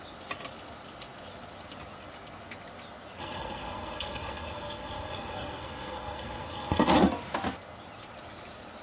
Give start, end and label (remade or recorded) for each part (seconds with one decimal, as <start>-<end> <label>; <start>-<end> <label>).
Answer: 0.0-3.2 recorded; 3.2-6.9 remade; 6.9-8.8 recorded